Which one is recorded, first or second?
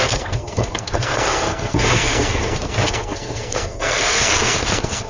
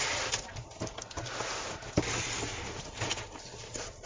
second